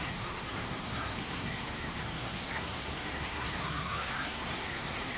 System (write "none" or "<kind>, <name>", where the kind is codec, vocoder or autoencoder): codec, SNAC